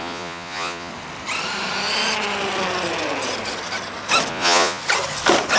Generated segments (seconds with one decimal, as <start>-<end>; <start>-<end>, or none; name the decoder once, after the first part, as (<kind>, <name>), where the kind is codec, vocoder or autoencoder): 0.0-0.9 (vocoder, Vocos); 4.3-4.8